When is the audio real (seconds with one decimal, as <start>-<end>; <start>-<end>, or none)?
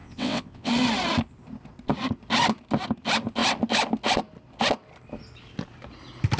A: 0.7-6.4